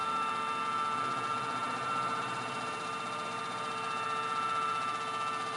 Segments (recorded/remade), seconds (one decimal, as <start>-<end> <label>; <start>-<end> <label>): 0.0-0.6 remade; 0.6-1.6 recorded; 1.6-5.0 remade; 5.0-5.6 recorded